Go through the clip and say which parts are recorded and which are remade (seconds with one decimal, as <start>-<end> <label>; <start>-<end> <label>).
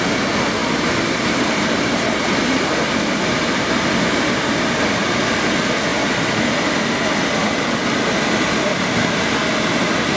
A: 0.0-0.6 recorded; 0.6-5.3 remade; 5.3-5.9 recorded; 5.9-6.8 remade; 6.8-10.2 recorded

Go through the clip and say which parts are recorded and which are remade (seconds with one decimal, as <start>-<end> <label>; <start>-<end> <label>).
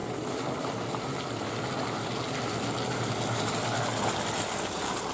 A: 0.0-5.1 recorded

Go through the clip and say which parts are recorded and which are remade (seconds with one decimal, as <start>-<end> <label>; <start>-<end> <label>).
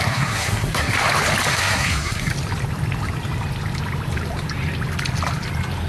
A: 0.0-0.9 remade; 0.9-1.5 recorded; 1.5-2.3 remade; 2.3-5.9 recorded